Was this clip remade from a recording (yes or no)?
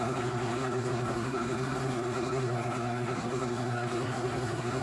yes